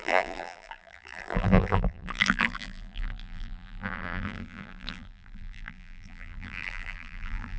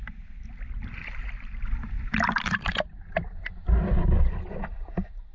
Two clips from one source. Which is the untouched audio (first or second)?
second